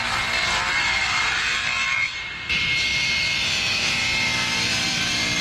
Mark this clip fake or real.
fake